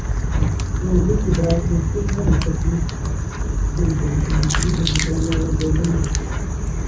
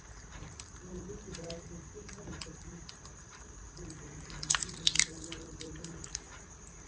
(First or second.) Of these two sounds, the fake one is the second